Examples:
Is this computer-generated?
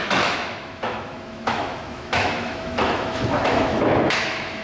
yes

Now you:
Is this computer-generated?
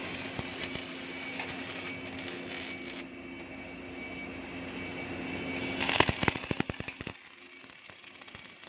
no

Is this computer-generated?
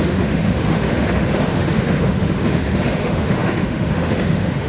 yes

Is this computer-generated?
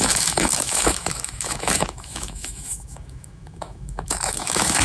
yes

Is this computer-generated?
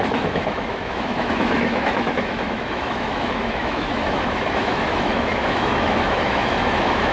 yes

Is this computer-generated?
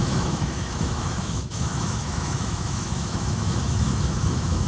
yes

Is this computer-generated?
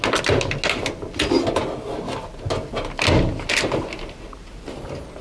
no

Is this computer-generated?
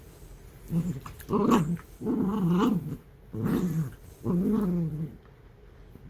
no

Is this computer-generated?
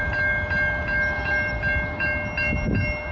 no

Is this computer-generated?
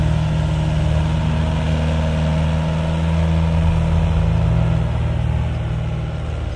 no